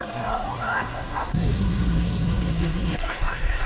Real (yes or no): no